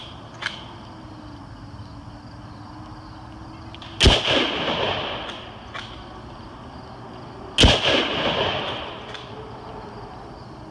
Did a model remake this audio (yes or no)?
no